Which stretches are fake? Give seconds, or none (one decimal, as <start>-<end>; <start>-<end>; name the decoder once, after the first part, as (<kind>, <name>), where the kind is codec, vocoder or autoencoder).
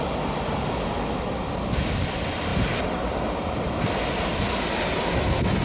none